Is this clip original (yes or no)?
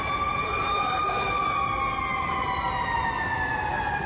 yes